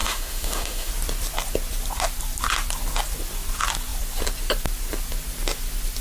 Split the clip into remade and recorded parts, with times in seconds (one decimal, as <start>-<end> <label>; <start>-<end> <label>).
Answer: 0.0-0.9 remade; 0.9-6.0 recorded